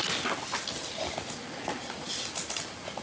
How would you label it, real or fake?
real